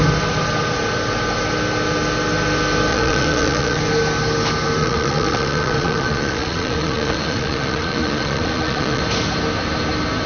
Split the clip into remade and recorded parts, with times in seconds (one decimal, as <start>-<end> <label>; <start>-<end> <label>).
0.0-2.9 recorded; 2.9-3.8 remade; 3.8-4.8 recorded; 4.8-9.0 remade; 9.0-10.3 recorded